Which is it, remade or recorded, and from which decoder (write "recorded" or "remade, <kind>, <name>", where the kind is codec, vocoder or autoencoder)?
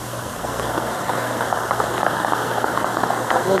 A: remade, codec, SNAC